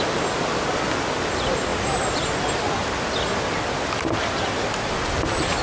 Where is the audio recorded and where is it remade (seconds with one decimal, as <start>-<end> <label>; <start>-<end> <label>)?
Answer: 0.0-5.6 recorded

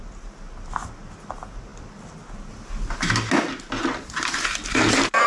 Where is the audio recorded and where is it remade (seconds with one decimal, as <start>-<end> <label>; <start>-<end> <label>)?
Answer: 0.0-5.3 recorded

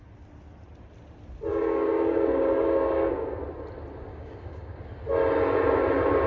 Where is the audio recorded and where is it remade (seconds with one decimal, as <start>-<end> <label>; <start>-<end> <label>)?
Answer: 0.0-1.5 recorded; 1.5-3.4 remade; 3.4-4.1 recorded; 4.1-4.8 remade; 4.8-6.3 recorded

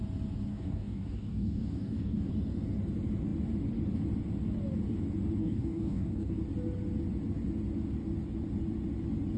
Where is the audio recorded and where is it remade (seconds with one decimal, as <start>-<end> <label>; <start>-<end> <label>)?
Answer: 0.0-0.5 recorded; 0.5-2.3 remade; 2.3-5.4 recorded; 5.4-6.4 remade; 6.4-9.4 recorded

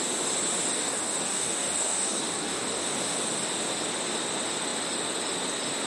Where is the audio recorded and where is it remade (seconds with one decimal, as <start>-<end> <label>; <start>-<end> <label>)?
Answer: 0.0-0.7 recorded; 0.7-2.8 remade; 2.8-5.9 recorded

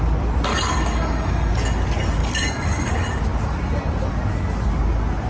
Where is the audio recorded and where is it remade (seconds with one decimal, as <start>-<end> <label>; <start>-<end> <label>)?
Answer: 0.0-0.5 recorded; 0.5-1.5 remade; 1.5-2.2 recorded; 2.2-2.9 remade; 2.9-5.3 recorded

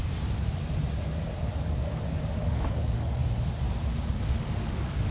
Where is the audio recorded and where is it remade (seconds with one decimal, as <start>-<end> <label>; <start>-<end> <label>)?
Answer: 0.0-1.5 recorded; 1.5-3.2 remade; 3.2-4.1 recorded; 4.1-5.1 remade